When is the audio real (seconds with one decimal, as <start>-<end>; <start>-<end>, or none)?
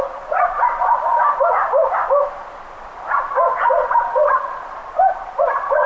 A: 1.6-3.6; 4.8-5.4